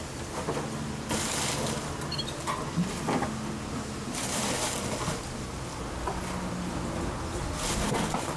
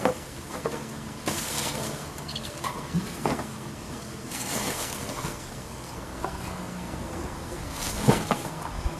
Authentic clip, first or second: first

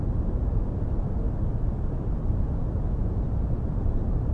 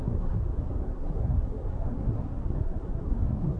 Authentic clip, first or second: first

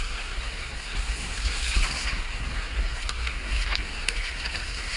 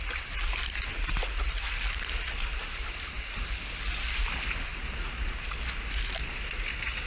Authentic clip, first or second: second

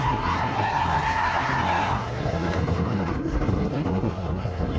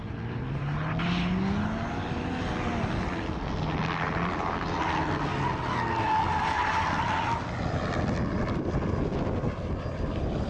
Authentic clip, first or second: second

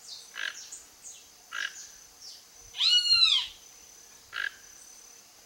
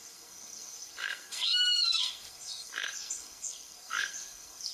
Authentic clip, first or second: first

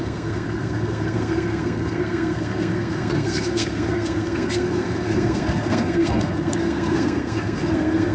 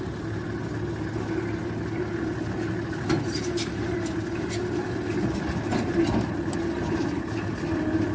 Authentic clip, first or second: second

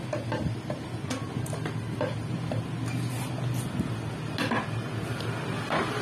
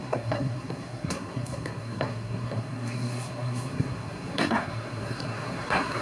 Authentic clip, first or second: first